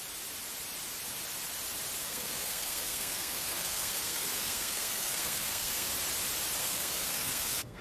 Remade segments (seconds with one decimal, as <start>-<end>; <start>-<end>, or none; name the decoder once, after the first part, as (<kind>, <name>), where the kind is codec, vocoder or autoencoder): 2.0-5.9 (codec, SNAC); 6.6-7.8